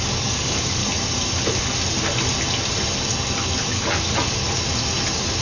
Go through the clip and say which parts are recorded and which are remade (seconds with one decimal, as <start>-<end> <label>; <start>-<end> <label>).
0.0-0.8 remade; 0.8-3.7 recorded; 3.7-4.4 remade; 4.4-5.4 recorded